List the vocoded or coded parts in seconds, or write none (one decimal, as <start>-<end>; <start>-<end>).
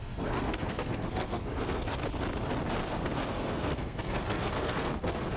0.0-2.0; 2.9-5.4